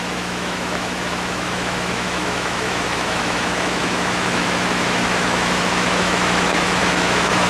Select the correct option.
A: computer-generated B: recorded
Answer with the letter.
A